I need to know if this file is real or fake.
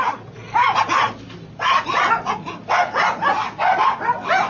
real